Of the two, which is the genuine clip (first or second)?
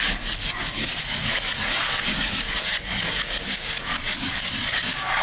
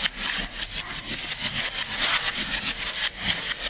second